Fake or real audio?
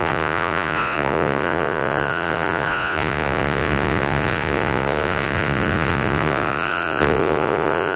fake